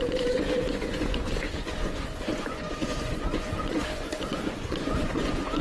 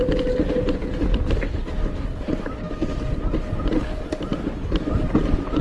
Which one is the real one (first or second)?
second